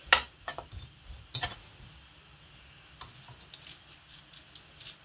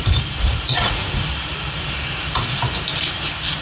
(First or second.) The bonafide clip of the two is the first